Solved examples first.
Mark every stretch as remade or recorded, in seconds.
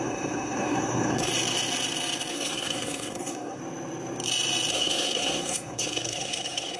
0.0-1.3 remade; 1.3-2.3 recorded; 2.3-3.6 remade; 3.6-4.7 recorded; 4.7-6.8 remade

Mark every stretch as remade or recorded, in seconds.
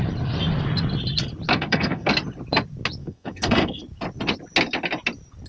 0.0-1.5 recorded; 1.5-2.1 remade; 2.1-3.0 recorded; 3.0-3.8 remade; 3.8-5.5 recorded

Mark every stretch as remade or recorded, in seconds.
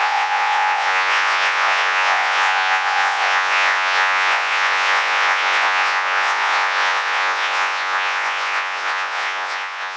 0.0-10.0 remade